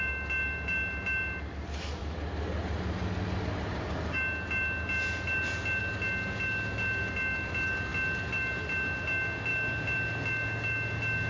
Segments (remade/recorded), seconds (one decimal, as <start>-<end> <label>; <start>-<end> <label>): 0.0-11.3 recorded